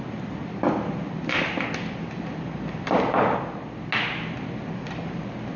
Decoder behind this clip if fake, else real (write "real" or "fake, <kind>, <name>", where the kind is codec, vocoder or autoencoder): real